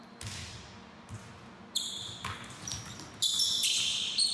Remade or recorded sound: recorded